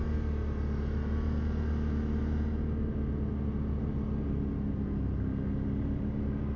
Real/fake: real